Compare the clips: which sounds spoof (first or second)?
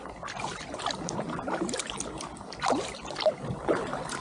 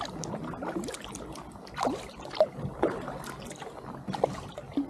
first